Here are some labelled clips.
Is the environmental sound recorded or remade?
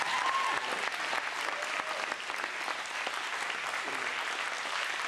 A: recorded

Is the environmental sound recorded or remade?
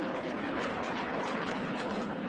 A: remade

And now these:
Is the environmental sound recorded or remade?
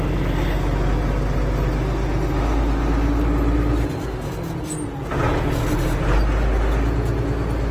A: recorded